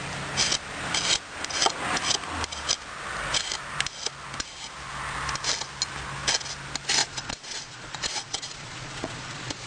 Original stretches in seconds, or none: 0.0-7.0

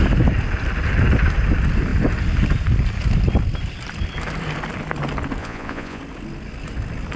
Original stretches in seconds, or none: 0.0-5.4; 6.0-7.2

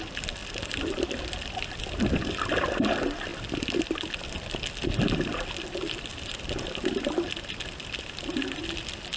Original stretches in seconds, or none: 0.0-9.2

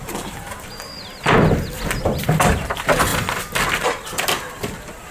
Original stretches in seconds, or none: 0.7-2.5; 3.1-5.1

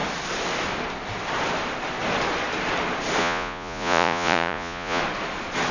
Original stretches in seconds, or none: 0.0-3.2; 5.0-5.7

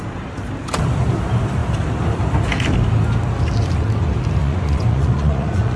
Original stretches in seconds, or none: 0.0-4.4

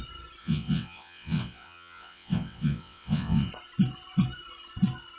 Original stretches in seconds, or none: 0.0-0.4; 3.5-5.2